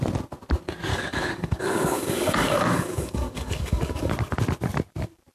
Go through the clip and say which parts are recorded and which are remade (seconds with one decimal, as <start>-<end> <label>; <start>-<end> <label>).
0.0-0.9 recorded; 0.9-4.1 remade; 4.1-5.3 recorded